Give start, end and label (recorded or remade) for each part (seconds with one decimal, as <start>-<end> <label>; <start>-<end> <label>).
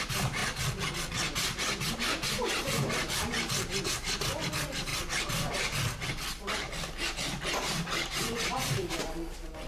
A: 0.0-0.4 remade; 0.4-1.9 recorded; 1.9-4.9 remade; 4.9-7.5 recorded; 7.5-9.7 remade